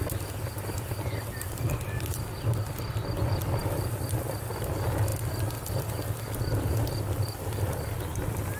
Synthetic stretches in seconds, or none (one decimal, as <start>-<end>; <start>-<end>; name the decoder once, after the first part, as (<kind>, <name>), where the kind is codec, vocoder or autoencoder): 3.6-4.5 (vocoder, BigVGAN v2)